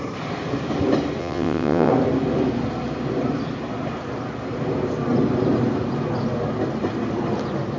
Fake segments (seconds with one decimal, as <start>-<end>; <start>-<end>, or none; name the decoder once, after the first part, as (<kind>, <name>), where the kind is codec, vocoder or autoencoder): 1.2-1.9 (vocoder, WaveNeXt)

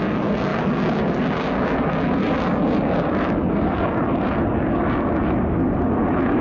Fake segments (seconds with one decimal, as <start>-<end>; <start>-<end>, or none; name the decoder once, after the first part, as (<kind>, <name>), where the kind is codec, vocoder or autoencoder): none

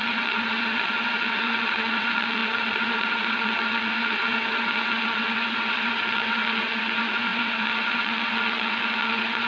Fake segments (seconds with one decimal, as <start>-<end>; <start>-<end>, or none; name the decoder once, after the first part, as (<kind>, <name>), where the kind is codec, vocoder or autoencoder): 0.0-9.5 (vocoder, WaveNeXt)

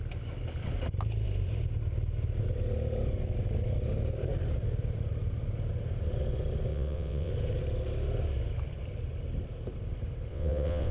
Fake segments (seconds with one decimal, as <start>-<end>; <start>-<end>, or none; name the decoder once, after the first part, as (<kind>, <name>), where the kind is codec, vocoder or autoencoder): 6.7-7.3 (vocoder, WaveNeXt); 10.3-10.9

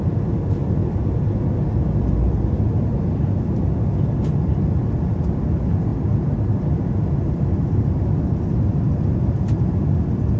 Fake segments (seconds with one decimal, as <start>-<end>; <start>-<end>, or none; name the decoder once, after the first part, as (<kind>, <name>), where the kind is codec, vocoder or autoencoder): none

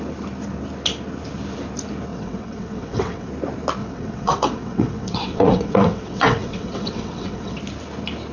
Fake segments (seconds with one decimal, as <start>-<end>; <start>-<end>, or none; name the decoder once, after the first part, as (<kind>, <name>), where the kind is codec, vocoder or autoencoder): 2.1-3.3 (vocoder, WaveNeXt); 3.8-7.6

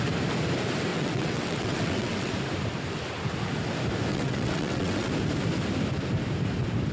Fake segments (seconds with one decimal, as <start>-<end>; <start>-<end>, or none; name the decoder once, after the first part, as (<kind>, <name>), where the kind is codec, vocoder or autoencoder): 0.9-2.3 (vocoder, WaveNeXt); 4.1-5.1

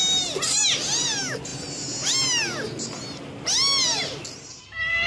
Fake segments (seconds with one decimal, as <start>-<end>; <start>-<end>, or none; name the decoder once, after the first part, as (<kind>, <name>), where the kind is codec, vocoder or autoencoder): none